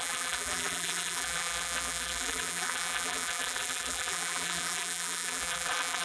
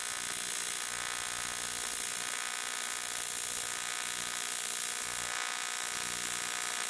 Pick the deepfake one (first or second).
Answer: first